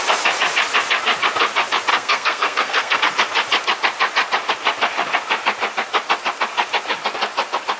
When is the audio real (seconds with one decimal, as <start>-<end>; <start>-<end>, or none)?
0.0-1.9; 3.0-7.8